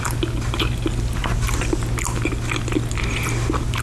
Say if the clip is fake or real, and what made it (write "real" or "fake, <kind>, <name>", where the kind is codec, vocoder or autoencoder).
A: real